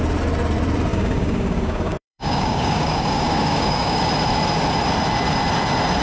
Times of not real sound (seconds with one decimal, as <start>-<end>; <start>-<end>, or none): 0.9-4.1